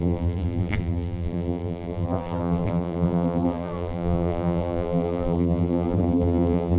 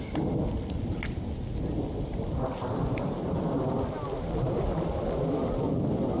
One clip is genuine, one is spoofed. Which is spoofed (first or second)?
first